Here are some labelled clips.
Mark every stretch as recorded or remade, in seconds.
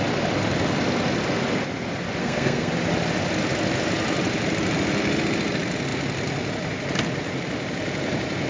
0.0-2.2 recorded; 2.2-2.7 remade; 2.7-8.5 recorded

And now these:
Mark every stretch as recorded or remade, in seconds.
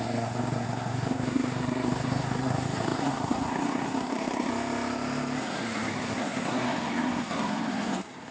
0.0-4.5 remade; 4.5-5.4 recorded; 5.4-8.3 remade